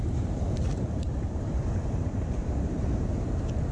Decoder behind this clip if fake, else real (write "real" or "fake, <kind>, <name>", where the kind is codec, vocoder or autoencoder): fake, vocoder, BigVGAN v2